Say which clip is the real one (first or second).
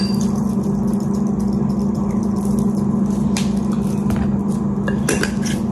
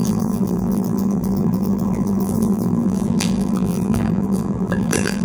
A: first